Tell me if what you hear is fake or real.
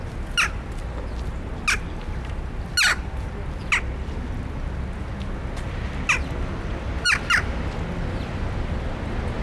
real